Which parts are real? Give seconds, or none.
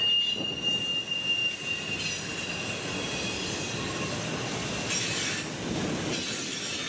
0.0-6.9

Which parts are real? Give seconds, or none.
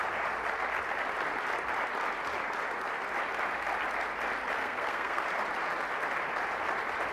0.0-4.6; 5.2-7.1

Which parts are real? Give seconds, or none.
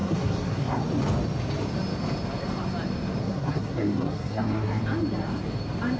0.8-3.2; 4.8-6.0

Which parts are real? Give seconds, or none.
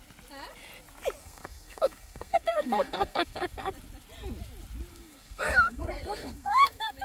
0.0-1.2; 3.7-4.9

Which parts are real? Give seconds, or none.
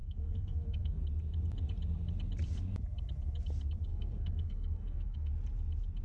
1.0-3.9; 5.3-6.0